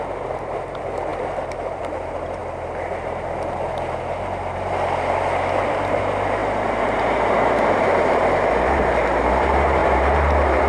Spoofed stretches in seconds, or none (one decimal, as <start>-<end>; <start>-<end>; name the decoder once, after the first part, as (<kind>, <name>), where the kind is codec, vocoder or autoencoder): 0.0-2.4 (vocoder, BigVGAN v2); 5.6-10.7